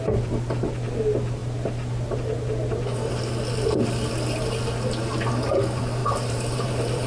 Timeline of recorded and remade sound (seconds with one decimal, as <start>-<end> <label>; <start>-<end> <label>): 0.0-6.0 recorded; 6.0-7.1 remade